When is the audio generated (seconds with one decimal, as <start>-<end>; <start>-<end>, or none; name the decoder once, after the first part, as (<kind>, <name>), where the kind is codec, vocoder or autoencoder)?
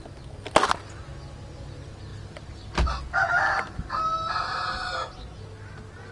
none